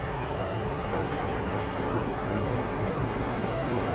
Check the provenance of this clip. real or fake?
fake